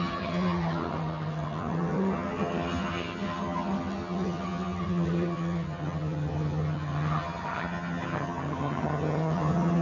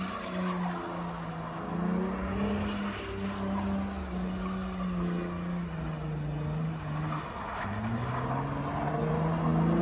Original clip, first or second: second